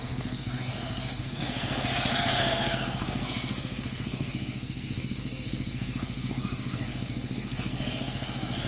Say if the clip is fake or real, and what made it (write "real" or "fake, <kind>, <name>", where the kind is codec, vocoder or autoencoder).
fake, codec, SNAC